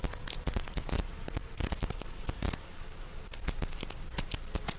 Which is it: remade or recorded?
recorded